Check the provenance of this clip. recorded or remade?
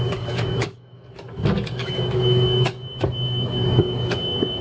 remade